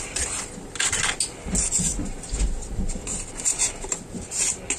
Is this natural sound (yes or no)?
yes